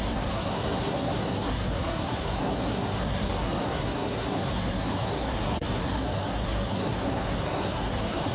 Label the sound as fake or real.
fake